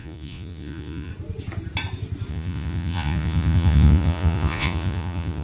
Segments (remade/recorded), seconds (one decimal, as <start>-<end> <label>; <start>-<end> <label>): 0.0-1.1 remade; 1.1-2.3 recorded; 2.3-5.4 remade